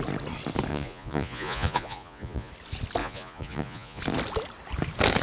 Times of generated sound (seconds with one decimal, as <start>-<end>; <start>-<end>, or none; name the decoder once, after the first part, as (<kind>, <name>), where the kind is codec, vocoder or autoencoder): 0.7-2.5 (vocoder, Vocos); 3.0-4.0